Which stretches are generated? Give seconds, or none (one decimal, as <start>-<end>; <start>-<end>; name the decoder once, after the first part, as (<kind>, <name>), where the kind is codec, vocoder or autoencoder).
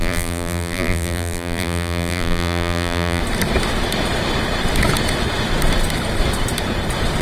0.0-3.2 (vocoder, BigVGAN v2)